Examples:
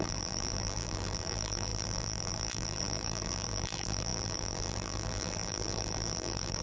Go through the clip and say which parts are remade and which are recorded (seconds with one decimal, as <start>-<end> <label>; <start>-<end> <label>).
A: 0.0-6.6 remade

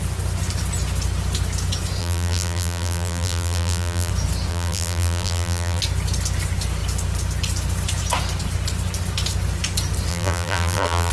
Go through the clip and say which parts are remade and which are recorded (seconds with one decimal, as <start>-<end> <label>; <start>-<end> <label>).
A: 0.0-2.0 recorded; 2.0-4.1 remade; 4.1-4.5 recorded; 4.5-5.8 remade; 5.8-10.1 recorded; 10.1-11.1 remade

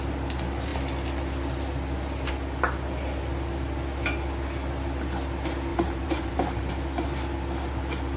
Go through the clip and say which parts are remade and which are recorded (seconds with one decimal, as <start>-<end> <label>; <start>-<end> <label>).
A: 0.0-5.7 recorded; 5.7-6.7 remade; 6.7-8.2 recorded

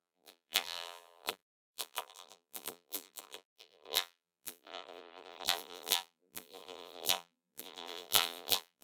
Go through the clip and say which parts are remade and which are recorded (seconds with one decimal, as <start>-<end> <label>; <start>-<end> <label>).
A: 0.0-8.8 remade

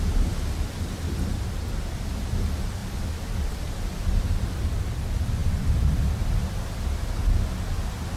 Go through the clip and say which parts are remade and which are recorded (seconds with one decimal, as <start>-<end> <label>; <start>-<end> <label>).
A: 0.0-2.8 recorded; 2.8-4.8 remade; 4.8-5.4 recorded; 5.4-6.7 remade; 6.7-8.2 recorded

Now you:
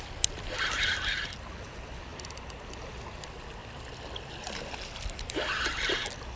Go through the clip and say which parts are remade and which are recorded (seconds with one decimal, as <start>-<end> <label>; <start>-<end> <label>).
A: 0.0-2.1 recorded; 2.1-2.6 remade; 2.6-3.6 recorded; 3.6-5.5 remade; 5.5-6.4 recorded